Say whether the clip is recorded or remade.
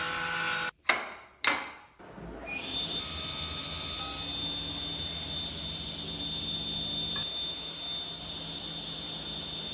recorded